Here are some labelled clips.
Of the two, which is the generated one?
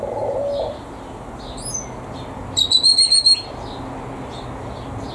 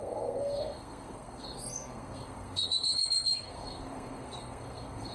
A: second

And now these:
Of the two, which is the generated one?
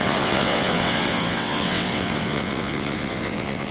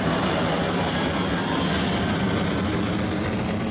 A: first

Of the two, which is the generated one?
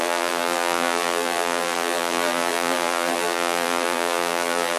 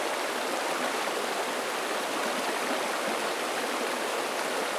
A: first